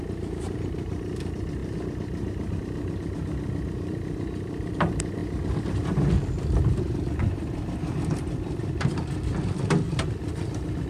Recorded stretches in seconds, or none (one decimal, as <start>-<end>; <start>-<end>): 5.2-6.8